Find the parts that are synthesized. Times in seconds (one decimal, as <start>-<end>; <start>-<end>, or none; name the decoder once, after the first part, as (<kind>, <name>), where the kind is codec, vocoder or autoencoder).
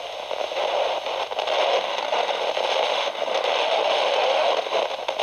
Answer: 1.7-2.4 (autoencoder, DAC-VAE); 2.9-4.8